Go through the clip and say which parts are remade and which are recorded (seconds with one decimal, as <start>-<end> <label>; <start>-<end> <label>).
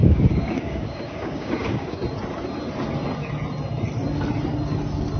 0.0-2.0 remade; 2.0-5.2 recorded